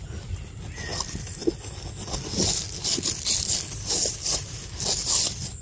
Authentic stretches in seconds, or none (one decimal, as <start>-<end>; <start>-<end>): 0.0-5.6